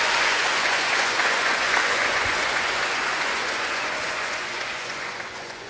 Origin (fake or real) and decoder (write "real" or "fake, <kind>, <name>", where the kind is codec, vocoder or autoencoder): fake, vocoder, Vocos